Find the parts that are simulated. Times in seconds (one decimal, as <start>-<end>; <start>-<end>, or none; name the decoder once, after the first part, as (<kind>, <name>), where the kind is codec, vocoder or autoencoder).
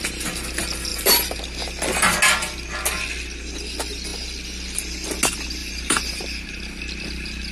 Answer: 0.9-1.4 (vocoder, BigVGAN v2); 5.6-6.6